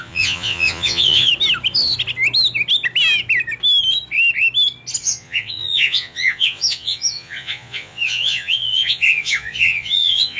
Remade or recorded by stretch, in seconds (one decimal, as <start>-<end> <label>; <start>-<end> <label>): 0.0-1.3 remade; 1.3-5.0 recorded; 5.0-10.4 remade